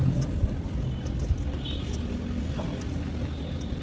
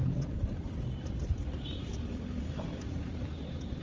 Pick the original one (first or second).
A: first